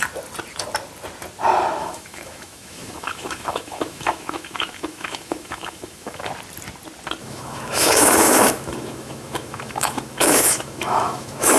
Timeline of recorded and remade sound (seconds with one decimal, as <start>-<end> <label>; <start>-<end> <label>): 0.0-1.8 recorded; 1.8-6.3 remade; 6.3-7.2 recorded; 7.2-11.6 remade